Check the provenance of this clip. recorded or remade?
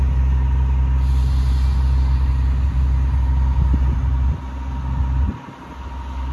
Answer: recorded